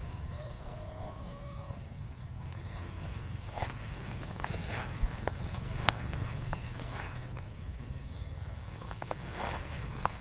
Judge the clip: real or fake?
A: fake